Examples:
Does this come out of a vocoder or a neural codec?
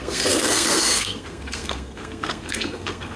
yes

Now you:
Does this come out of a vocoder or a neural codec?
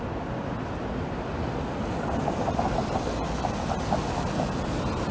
no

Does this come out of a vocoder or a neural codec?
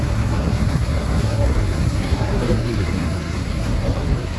yes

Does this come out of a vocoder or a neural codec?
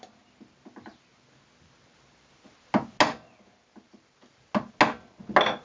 no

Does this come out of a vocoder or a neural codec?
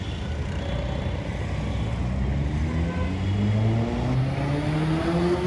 no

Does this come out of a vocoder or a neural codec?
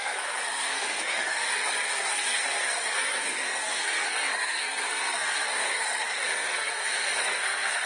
yes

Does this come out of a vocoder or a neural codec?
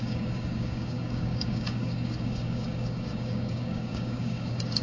yes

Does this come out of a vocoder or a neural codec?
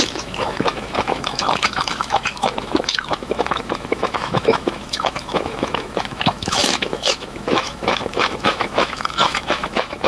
yes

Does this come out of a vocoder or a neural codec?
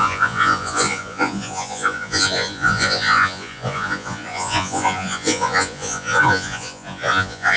yes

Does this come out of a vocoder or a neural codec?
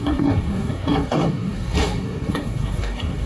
yes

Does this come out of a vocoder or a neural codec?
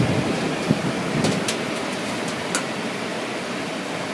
no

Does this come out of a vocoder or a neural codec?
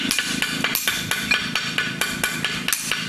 no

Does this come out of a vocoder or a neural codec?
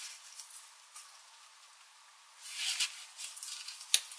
no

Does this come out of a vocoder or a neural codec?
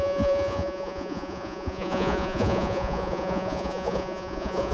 yes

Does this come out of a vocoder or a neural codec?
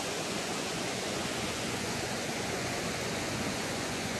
yes